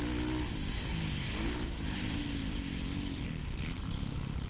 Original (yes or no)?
yes